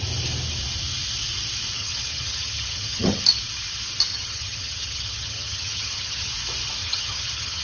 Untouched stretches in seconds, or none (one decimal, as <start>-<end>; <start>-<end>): 0.0-1.8; 3.2-4.1; 6.3-6.8

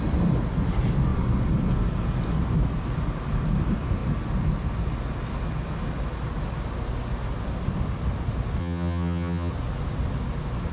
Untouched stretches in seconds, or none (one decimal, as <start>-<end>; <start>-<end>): 0.0-8.6; 9.5-10.7

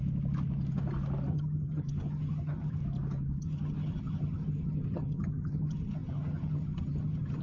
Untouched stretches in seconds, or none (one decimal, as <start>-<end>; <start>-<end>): 0.0-1.3; 2.8-3.4

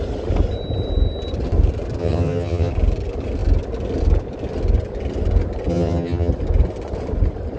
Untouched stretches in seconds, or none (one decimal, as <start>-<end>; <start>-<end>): 0.0-2.0; 2.7-5.7; 6.3-7.6

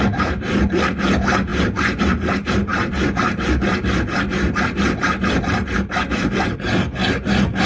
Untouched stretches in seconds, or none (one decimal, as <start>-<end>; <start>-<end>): 0.0-7.7

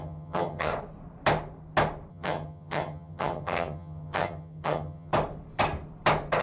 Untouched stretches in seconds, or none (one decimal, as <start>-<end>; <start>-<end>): 0.7-2.1; 5.1-6.4

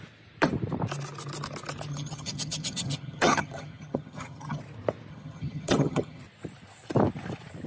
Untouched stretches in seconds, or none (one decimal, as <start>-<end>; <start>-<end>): 0.0-1.9; 4.6-5.1; 6.2-7.7

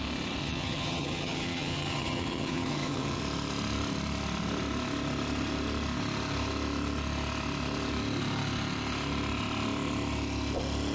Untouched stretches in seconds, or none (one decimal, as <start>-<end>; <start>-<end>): 0.0-0.4; 3.2-10.9